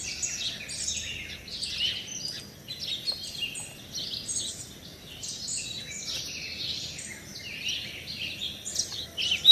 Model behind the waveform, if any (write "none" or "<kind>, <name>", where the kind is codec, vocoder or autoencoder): none